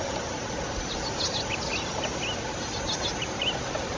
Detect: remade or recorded recorded